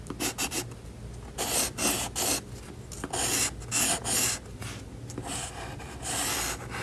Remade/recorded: recorded